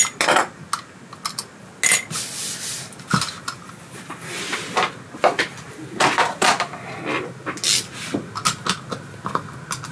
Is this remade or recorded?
recorded